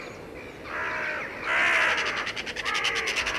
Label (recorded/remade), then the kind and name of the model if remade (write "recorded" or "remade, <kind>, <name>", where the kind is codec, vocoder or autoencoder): recorded